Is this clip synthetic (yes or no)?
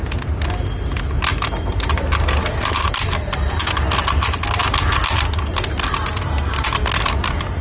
no